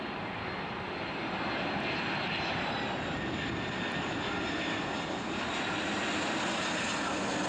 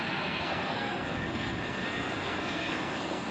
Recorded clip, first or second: first